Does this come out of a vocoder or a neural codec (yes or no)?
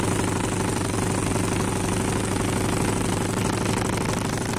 no